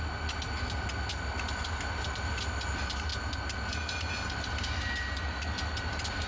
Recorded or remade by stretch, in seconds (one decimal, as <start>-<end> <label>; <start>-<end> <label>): 0.0-6.3 recorded